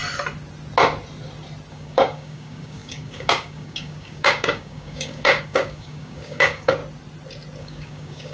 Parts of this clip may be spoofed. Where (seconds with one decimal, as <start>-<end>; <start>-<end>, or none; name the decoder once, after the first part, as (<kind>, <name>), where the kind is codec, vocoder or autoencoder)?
1.7-6.8 (codec, DAC); 7.6-8.3